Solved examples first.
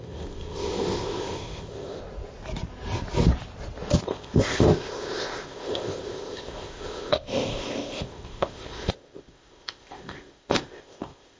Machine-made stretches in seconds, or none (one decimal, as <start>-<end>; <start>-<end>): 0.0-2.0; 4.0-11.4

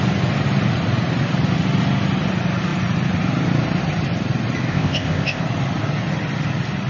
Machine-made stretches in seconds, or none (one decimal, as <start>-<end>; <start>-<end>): 4.7-5.4

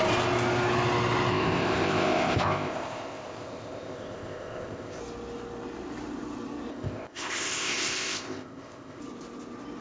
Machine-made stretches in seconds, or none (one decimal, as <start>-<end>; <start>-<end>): 1.3-5.0; 6.7-9.0